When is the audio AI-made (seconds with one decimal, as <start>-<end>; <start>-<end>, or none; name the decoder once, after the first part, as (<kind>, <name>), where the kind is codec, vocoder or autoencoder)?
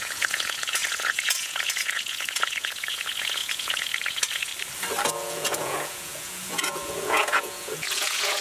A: 0.0-4.5 (vocoder, Vocos); 5.0-8.4